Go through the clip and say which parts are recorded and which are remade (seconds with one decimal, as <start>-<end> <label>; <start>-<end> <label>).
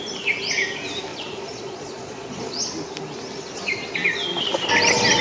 0.0-1.1 recorded; 1.1-2.7 remade; 2.7-5.2 recorded